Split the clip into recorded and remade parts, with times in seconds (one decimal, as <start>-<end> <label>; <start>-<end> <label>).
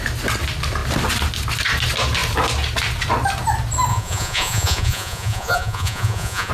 0.0-3.9 recorded; 3.9-6.5 remade